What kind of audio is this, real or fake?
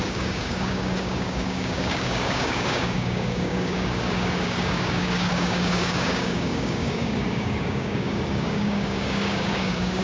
fake